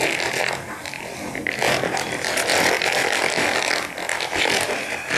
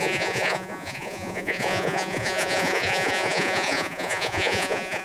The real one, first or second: first